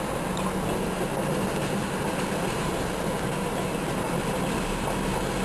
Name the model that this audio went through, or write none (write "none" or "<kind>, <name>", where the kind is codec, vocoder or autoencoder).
none